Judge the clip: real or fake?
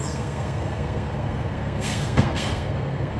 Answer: fake